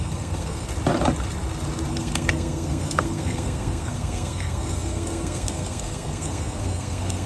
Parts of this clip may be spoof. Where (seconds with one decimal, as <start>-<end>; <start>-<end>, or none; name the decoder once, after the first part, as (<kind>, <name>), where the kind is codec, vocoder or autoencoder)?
0.0-0.7 (codec, SNAC); 1.9-7.3